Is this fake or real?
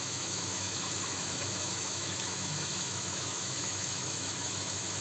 fake